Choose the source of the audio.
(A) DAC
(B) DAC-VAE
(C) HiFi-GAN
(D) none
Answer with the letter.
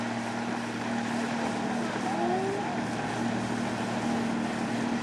D